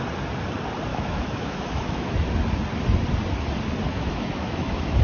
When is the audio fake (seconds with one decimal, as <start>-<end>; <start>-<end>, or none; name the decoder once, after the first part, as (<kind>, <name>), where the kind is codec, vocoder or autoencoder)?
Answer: 0.9-2.1 (autoencoder, DAC-VAE); 3.9-5.0